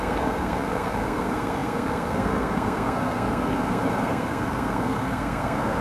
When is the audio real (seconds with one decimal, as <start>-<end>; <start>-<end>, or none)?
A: none